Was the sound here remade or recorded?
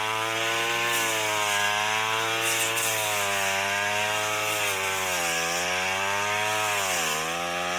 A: recorded